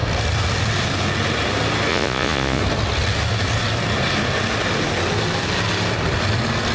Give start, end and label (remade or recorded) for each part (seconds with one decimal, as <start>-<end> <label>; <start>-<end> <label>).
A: 0.0-1.9 recorded; 1.9-2.6 remade; 2.6-6.7 recorded